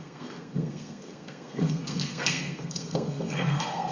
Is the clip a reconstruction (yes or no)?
yes